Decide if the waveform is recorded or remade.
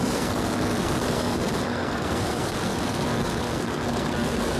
remade